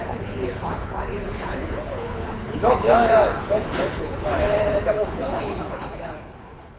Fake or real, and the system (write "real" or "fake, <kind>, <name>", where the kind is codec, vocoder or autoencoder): fake, codec, HILCodec